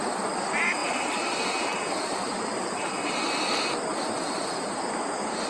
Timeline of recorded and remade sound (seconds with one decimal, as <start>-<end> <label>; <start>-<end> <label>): 0.0-5.5 recorded